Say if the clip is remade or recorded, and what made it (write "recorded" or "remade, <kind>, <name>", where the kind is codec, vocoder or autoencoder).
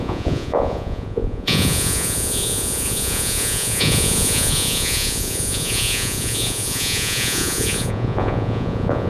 remade, vocoder, Vocos